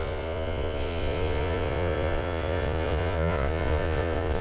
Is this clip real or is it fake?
fake